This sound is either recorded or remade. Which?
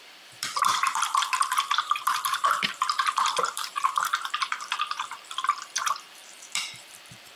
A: remade